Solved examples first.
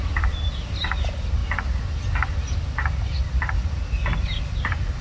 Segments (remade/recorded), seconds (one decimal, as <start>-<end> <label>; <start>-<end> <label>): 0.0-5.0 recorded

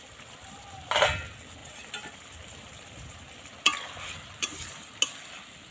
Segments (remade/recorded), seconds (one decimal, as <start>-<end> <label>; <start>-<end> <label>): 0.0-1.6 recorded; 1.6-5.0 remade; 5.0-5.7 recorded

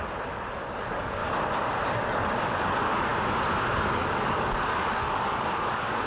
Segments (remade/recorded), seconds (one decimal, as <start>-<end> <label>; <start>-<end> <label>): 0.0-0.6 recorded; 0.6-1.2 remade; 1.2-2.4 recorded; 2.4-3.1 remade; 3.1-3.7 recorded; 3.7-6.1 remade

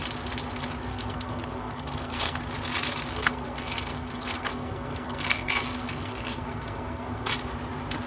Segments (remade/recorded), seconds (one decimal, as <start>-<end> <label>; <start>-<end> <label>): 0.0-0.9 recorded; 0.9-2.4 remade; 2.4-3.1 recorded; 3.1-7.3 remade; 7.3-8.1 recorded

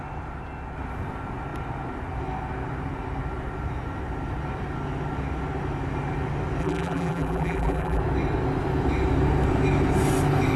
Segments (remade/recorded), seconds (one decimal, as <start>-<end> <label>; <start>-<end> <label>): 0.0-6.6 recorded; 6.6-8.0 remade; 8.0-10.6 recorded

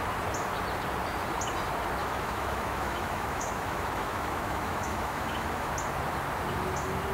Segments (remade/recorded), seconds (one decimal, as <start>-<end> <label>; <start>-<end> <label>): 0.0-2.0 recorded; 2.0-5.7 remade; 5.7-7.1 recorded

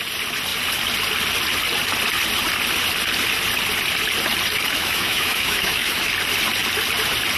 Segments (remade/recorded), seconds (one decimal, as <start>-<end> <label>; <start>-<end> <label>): 0.0-4.8 recorded; 4.8-6.1 remade; 6.1-7.4 recorded

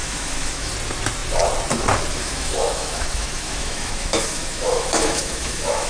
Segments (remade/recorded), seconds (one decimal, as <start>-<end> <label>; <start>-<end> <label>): 0.0-0.7 remade; 0.7-2.1 recorded; 2.1-5.9 remade